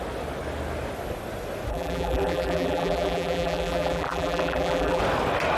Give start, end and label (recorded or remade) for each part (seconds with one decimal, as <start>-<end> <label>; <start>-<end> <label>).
0.0-1.7 recorded; 1.7-5.0 remade; 5.0-5.6 recorded